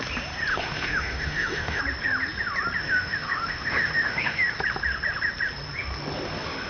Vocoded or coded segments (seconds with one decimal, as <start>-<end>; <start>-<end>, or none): 0.5-1.8; 2.8-4.5